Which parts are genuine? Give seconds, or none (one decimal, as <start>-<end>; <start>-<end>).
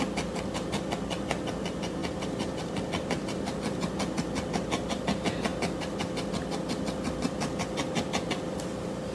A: 0.0-2.0; 2.8-9.1